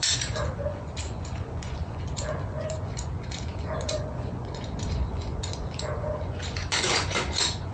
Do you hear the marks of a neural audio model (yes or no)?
yes